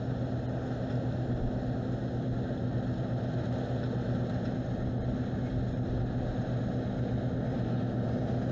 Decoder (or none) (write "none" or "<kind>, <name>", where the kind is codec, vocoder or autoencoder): none